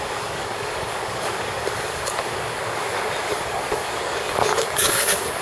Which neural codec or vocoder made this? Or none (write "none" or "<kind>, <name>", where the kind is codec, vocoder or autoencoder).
codec, DAC